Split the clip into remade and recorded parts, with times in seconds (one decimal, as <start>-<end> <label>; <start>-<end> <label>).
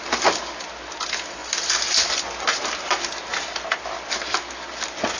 0.0-5.2 recorded